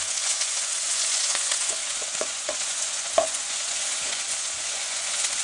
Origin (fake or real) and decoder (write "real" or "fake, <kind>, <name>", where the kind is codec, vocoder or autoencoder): fake, vocoder, Vocos